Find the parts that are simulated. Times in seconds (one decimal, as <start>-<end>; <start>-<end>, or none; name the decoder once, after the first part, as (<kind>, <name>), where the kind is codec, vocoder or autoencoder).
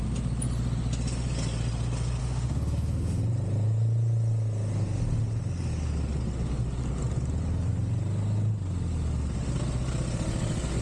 2.2-3.2 (autoencoder, DAC-VAE)